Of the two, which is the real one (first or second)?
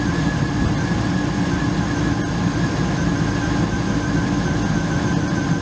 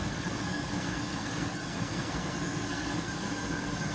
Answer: first